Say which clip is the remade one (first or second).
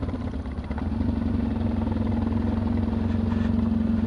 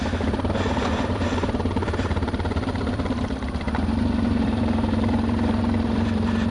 second